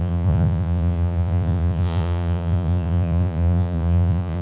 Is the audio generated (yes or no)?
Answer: yes